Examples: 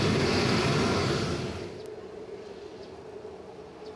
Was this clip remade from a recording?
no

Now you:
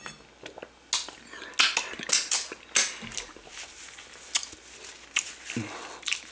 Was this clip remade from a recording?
no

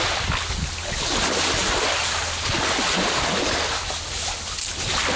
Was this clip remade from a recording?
no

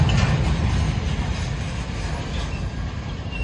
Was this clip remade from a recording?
no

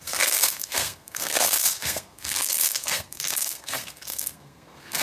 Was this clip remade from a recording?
yes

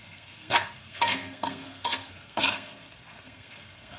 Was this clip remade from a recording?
yes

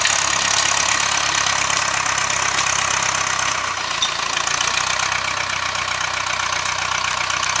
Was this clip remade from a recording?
no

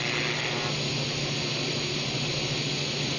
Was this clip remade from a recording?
no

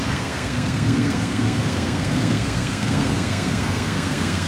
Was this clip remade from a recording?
yes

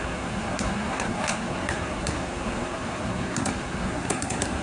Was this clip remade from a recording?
yes